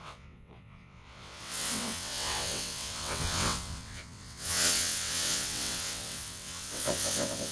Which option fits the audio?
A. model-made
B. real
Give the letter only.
A